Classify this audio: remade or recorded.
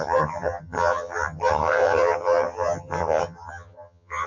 remade